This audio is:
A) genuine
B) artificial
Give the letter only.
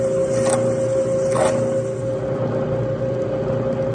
A